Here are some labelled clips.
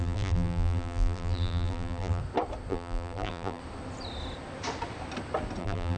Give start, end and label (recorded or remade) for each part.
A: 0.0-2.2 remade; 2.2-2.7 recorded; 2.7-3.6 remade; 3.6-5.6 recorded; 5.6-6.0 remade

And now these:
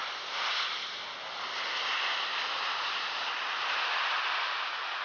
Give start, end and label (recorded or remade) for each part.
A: 0.0-2.3 recorded; 2.3-5.0 remade

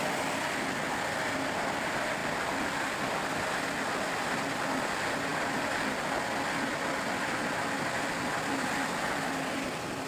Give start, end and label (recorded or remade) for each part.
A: 0.0-10.1 recorded

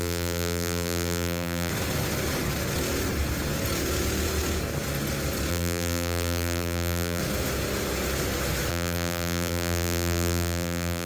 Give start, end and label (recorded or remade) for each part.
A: 0.0-1.7 remade; 1.7-5.5 recorded; 5.5-7.2 remade; 7.2-8.7 recorded; 8.7-11.1 remade

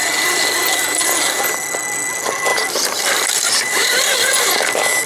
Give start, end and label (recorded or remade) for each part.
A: 0.0-3.8 recorded; 3.8-4.5 remade; 4.5-5.1 recorded